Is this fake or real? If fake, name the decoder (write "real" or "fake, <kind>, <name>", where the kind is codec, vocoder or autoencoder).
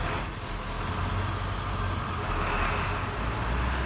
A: real